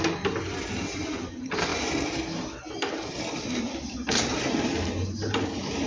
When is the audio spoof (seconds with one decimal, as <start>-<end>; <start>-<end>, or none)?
none

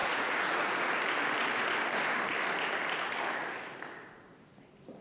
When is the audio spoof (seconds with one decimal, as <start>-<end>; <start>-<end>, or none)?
0.0-0.9